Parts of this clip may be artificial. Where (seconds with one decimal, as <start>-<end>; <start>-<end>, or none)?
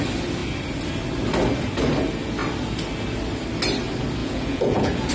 4.2-5.1